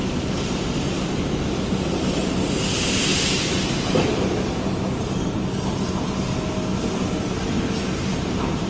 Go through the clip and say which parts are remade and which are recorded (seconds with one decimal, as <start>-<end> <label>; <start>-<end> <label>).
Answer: 0.0-8.7 recorded